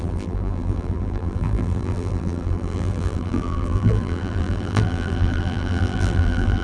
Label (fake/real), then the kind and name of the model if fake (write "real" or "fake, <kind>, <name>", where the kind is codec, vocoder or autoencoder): fake, vocoder, BigVGAN v2